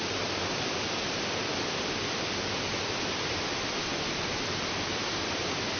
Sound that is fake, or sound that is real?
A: real